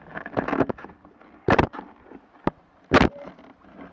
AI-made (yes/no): no